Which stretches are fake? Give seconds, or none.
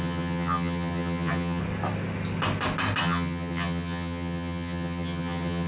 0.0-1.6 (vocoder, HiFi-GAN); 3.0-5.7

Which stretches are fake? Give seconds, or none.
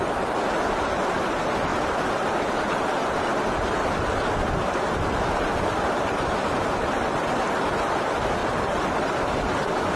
1.7-2.9 (vocoder, BigVGAN v2)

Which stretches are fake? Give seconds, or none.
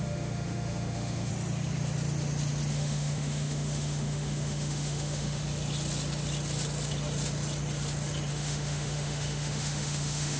0.0-1.3 (autoencoder, DAC-VAE); 2.7-5.4; 8.3-10.4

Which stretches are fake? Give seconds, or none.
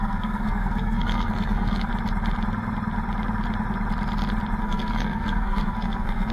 0.0-1.9 (codec, SNAC); 4.6-6.3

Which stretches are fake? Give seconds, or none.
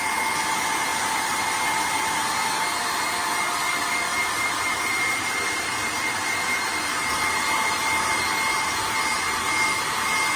3.6-8.2 (vocoder, BigVGAN v2)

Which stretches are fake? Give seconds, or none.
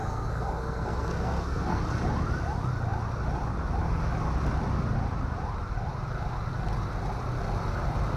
0.0-1.8 (codec, SNAC)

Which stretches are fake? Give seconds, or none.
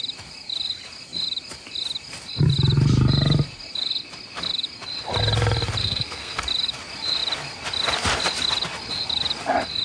5.8-6.4 (codec, SNAC)